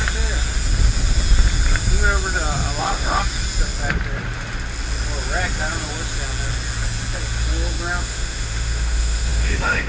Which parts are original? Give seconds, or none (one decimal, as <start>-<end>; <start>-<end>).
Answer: 0.0-2.8; 3.2-8.0